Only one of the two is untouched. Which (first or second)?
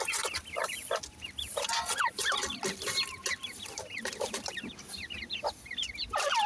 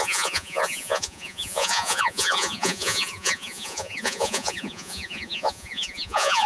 first